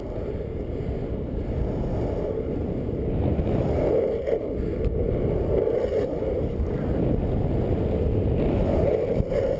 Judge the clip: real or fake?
real